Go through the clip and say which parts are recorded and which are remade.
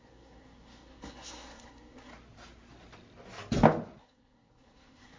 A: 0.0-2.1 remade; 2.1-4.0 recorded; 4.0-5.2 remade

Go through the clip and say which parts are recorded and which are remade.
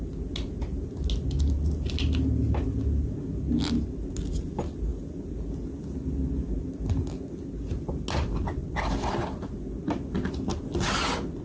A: 0.0-11.4 recorded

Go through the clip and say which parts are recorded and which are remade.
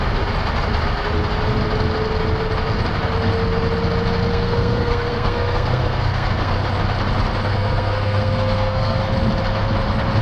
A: 0.0-4.3 recorded; 4.3-6.5 remade; 6.5-7.5 recorded; 7.5-9.0 remade; 9.0-10.2 recorded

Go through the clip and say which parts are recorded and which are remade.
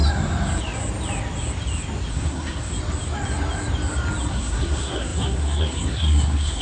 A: 0.0-2.1 recorded; 2.1-2.7 remade; 2.7-4.3 recorded; 4.3-6.6 remade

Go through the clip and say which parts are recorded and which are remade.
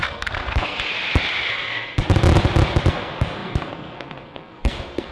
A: 0.0-0.9 remade; 0.9-1.5 recorded; 1.5-2.0 remade; 2.0-2.9 recorded; 2.9-5.1 remade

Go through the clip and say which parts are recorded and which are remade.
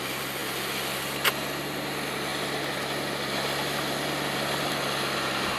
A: 0.0-5.6 recorded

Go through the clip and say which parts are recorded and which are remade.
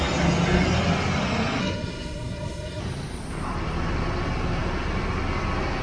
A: 0.0-1.6 recorded; 1.6-2.8 remade; 2.8-5.8 recorded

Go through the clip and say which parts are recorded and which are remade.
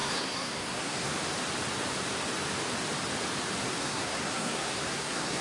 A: 0.0-1.1 remade; 1.1-3.8 recorded; 3.8-5.4 remade